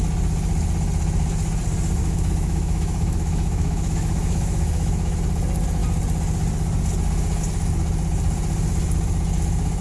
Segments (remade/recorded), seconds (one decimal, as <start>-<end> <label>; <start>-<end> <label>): 0.0-2.0 recorded; 2.0-5.2 remade; 5.2-9.8 recorded